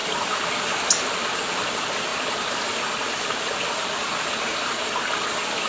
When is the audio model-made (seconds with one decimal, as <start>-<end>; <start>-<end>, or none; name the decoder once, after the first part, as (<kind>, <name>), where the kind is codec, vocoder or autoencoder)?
none